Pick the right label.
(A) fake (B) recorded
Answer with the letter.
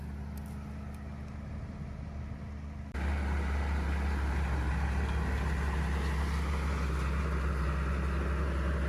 B